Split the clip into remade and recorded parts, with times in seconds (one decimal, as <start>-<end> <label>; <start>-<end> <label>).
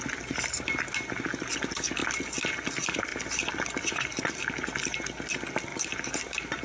0.0-3.1 recorded; 3.1-4.3 remade; 4.3-5.7 recorded; 5.7-6.6 remade